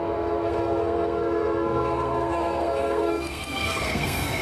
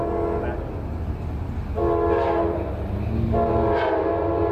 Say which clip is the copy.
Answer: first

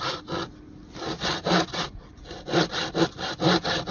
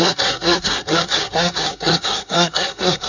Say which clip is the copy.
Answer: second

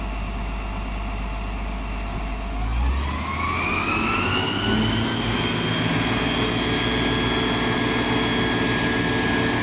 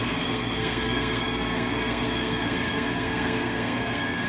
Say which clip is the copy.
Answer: second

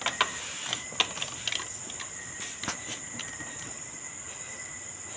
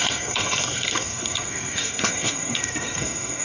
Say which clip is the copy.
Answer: second